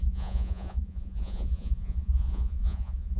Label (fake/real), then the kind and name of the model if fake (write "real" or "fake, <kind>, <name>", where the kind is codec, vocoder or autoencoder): fake, vocoder, Vocos